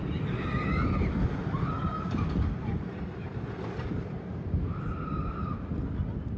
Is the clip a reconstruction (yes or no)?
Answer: no